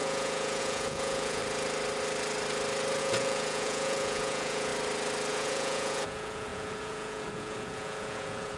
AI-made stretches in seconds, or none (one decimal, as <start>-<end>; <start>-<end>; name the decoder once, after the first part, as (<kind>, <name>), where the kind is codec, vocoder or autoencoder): 0.0-1.4 (vocoder, Vocos); 3.0-4.7; 5.3-8.6